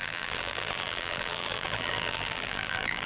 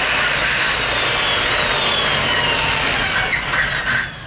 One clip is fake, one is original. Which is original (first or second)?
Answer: second